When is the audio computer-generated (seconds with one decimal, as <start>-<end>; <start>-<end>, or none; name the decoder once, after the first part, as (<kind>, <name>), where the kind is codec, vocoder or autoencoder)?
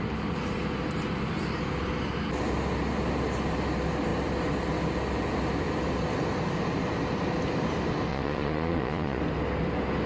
8.1-9.2 (vocoder, Vocos)